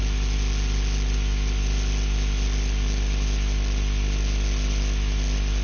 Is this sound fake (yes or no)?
no